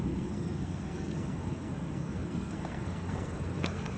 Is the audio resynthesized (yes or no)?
yes